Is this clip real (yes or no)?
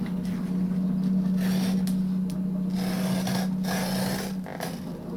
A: yes